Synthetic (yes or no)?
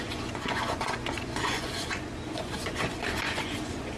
yes